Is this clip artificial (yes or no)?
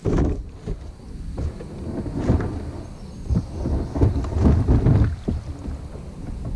no